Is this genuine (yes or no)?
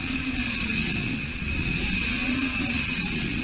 no